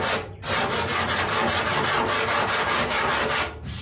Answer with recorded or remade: recorded